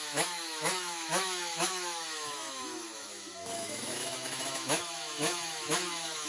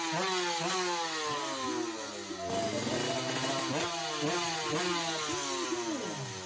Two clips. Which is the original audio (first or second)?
second